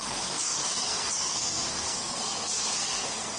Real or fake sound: fake